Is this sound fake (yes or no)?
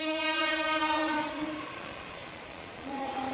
yes